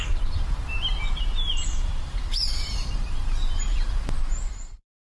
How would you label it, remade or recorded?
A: remade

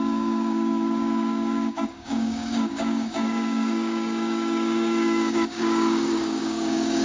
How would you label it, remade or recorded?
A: remade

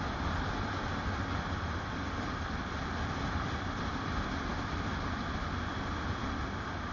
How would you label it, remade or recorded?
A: recorded